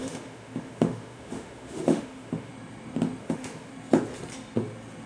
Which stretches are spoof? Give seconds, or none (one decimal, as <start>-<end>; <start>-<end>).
0.0-2.5; 3.2-3.7